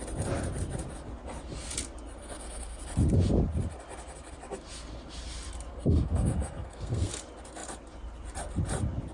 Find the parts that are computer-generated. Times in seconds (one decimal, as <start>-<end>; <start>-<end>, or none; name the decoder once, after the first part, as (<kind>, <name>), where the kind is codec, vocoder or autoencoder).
2.2-2.8 (codec, SNAC); 5.7-7.1